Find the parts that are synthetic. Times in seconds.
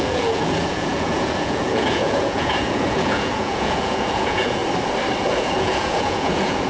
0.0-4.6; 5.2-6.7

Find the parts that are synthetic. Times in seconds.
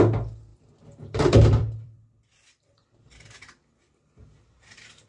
0.5-3.1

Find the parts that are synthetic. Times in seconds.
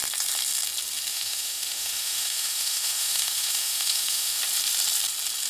1.1-4.4